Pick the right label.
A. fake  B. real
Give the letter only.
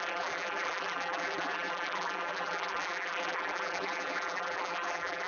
A